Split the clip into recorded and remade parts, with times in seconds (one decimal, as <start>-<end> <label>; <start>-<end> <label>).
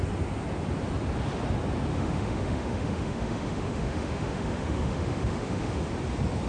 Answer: 0.0-1.9 recorded; 1.9-5.8 remade; 5.8-6.5 recorded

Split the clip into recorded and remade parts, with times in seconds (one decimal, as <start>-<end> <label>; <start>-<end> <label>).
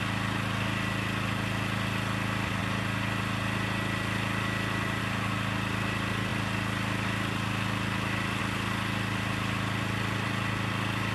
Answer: 0.0-11.1 recorded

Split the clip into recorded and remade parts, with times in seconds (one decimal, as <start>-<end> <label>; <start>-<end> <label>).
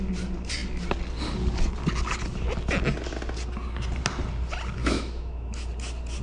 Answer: 0.0-4.8 recorded; 4.8-5.7 remade; 5.7-6.2 recorded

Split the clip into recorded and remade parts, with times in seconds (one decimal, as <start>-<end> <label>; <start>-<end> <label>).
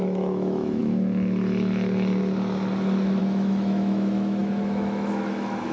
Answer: 0.0-0.8 remade; 0.8-3.2 recorded; 3.2-5.7 remade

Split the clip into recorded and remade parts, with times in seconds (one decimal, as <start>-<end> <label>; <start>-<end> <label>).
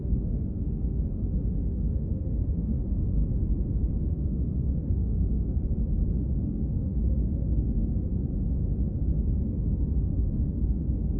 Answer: 0.0-3.2 remade; 3.2-4.0 recorded; 4.0-5.6 remade; 5.6-6.4 recorded; 6.4-8.1 remade; 8.1-9.0 recorded; 9.0-11.2 remade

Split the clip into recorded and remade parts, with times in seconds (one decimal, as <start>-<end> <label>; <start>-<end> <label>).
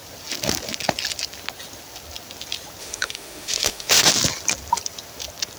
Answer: 0.0-2.8 recorded; 2.8-4.1 remade; 4.1-5.6 recorded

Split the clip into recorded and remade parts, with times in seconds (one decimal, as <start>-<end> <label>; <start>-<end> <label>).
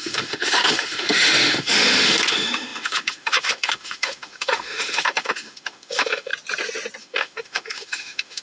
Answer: 0.0-6.3 remade; 6.3-7.0 recorded; 7.0-8.4 remade